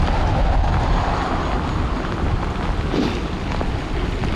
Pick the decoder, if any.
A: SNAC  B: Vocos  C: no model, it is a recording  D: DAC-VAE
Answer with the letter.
C